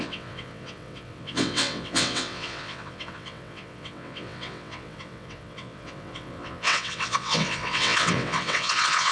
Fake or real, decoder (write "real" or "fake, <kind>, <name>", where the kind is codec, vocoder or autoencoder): fake, vocoder, WaveNeXt